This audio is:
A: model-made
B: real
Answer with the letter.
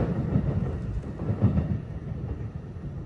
B